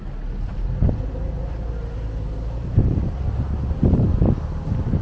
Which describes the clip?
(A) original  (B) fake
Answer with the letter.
A